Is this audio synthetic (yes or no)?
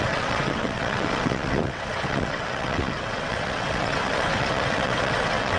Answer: yes